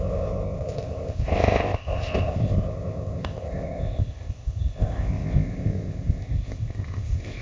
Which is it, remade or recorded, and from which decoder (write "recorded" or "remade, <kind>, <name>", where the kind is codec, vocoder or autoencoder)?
remade, codec, ZipCodec